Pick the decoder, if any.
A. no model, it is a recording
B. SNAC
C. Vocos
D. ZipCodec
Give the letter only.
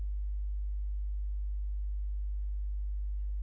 A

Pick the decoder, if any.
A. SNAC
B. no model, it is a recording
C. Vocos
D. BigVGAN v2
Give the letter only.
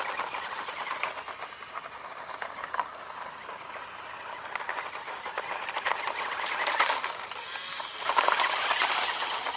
B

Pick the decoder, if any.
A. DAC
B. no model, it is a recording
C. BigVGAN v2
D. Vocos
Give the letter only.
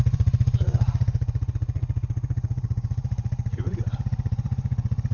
D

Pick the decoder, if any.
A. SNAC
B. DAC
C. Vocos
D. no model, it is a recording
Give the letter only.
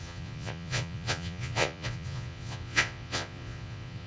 C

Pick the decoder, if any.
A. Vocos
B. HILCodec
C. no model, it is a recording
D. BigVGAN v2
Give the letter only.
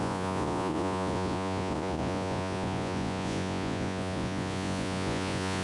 A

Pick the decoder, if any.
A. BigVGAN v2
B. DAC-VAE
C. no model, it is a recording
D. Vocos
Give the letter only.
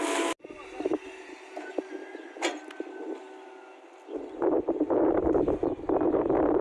C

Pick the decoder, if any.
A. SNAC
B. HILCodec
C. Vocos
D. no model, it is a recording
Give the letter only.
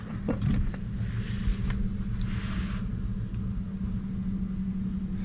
D